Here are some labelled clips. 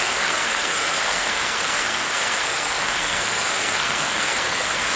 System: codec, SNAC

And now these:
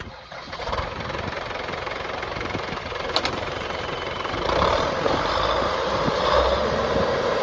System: vocoder, BigVGAN v2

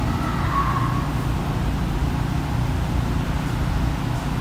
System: none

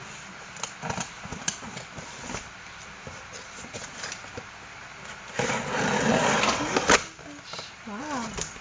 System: none